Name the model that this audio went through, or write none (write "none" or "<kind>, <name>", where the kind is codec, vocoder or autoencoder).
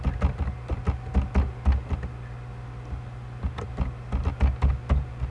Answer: none